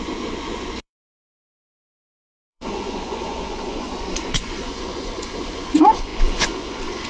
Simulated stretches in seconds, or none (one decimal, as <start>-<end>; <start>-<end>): 0.0-7.1